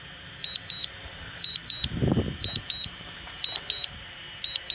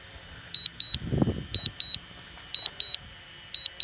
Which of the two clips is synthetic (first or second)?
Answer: first